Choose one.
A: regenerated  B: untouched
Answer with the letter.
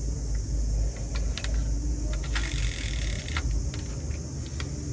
B